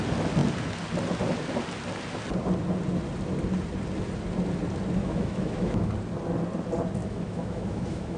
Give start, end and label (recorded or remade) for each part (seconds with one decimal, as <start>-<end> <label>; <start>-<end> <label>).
0.0-5.0 recorded; 5.0-5.9 remade; 5.9-7.0 recorded; 7.0-8.2 remade